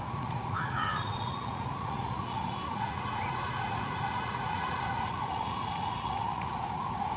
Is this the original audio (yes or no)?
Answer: no